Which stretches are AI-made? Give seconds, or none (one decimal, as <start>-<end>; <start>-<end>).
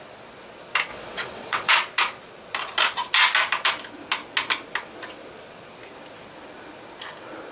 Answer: 0.9-1.7